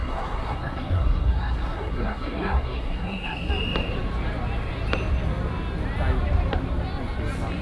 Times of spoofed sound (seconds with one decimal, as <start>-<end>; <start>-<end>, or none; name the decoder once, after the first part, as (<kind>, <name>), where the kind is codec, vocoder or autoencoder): 0.0-3.5 (codec, SNAC)